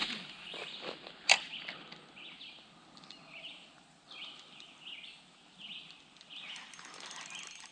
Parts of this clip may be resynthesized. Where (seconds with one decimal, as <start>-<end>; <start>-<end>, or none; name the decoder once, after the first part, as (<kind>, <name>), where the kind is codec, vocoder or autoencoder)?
none